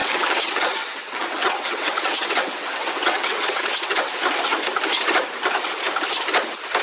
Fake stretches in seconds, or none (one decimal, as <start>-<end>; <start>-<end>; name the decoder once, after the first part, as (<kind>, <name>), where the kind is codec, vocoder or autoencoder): 0.0-4.1 (vocoder, WaveNeXt)